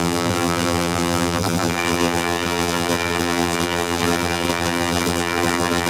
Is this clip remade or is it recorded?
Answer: remade